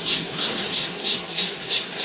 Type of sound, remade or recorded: remade